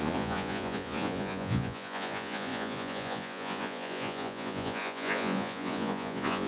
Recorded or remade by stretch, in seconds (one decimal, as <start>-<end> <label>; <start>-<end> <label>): 0.0-6.5 remade